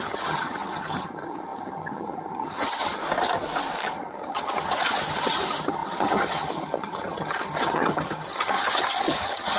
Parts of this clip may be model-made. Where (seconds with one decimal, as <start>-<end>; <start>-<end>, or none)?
0.0-3.0; 3.9-9.6